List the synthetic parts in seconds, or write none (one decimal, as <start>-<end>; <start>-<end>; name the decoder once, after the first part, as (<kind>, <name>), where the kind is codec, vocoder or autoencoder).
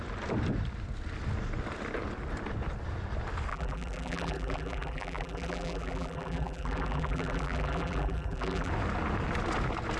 3.5-8.7 (vocoder, BigVGAN v2)